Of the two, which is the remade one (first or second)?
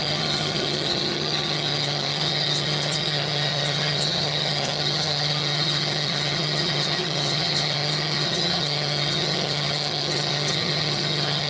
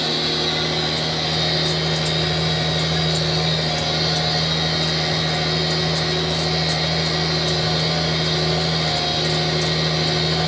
first